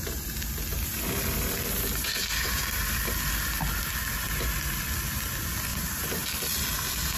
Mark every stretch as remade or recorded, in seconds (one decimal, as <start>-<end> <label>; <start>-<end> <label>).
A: 0.0-2.0 recorded; 2.0-2.6 remade; 2.6-5.7 recorded; 5.7-6.2 remade; 6.2-7.2 recorded